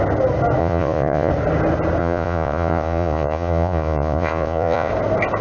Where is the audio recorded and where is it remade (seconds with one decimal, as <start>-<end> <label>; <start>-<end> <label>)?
0.0-0.6 recorded; 0.6-1.3 remade; 1.3-2.0 recorded; 2.0-4.9 remade; 4.9-5.4 recorded